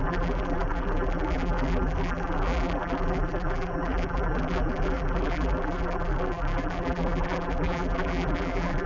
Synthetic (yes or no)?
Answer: yes